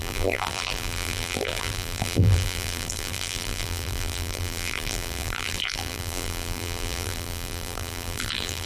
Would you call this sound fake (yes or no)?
yes